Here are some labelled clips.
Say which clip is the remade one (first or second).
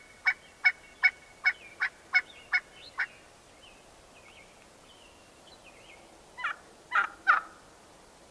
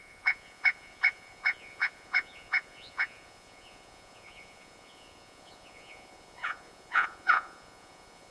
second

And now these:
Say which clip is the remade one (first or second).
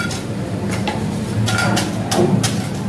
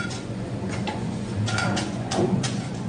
second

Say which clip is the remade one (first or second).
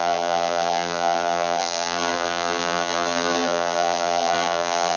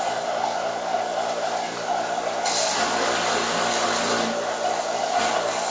first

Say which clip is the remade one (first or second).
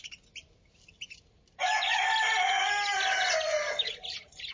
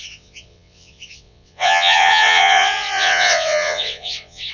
second